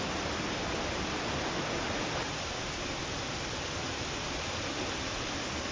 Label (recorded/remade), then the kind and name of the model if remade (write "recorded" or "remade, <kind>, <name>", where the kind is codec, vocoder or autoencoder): recorded